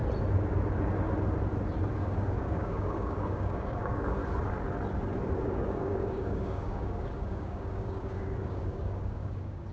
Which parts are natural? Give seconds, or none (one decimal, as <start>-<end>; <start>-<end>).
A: 0.0-1.9; 4.2-5.4

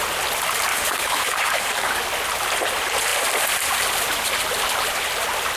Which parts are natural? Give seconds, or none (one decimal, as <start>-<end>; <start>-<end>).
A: 0.0-0.7; 2.1-5.6

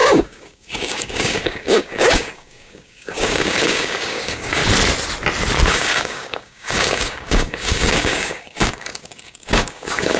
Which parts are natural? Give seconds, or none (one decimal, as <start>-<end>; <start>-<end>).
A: 4.6-5.7

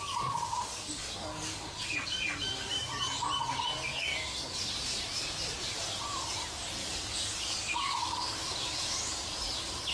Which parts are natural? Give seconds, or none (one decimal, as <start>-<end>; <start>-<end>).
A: 0.0-0.7; 2.9-3.9; 4.7-6.8; 9.2-9.9

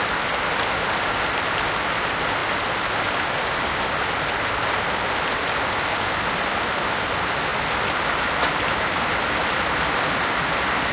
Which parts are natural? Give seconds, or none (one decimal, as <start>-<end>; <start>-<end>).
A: 0.0-10.9